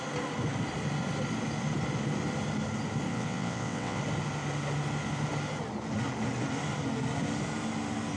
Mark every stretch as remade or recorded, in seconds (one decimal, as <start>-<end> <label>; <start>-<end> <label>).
0.0-3.1 recorded; 3.1-4.0 remade; 4.0-8.2 recorded